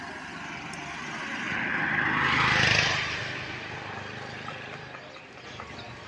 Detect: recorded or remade recorded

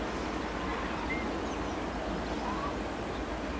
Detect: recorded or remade recorded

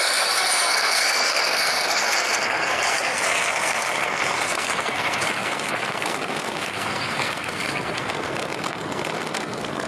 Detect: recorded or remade remade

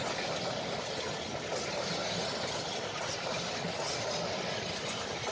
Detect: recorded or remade recorded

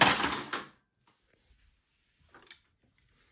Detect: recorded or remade recorded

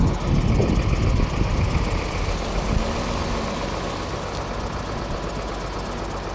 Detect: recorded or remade recorded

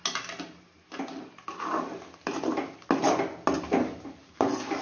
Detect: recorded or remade recorded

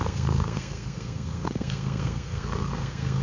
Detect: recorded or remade remade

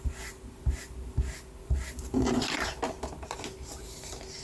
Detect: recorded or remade recorded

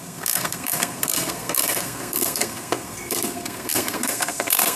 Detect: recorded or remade remade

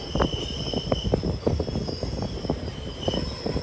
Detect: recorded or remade recorded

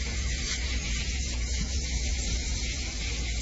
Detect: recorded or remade remade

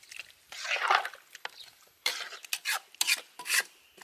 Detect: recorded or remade recorded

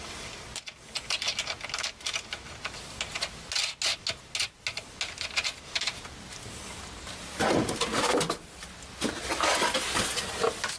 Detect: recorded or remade recorded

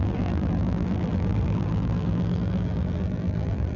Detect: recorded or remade remade